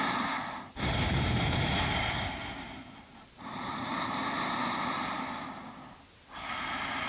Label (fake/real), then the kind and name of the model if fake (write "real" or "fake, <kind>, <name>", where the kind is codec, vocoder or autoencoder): real